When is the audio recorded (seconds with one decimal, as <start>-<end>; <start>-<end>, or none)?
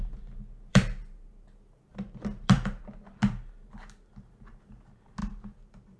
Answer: 0.0-0.7; 2.8-5.2